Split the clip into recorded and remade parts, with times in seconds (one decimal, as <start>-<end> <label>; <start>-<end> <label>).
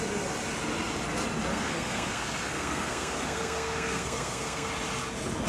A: 0.0-1.5 recorded; 1.5-4.7 remade; 4.7-5.5 recorded